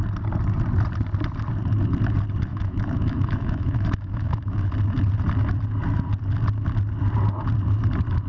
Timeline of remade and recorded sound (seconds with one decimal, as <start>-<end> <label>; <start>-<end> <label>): 0.0-2.5 recorded; 2.5-4.7 remade; 4.7-8.3 recorded